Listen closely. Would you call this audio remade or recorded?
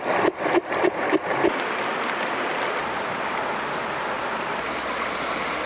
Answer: recorded